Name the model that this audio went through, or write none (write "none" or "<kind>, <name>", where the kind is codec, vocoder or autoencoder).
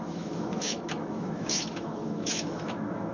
autoencoder, DAC-VAE